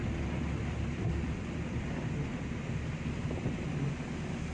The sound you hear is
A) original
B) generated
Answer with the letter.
B